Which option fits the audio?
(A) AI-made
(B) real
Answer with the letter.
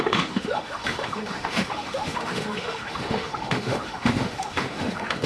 A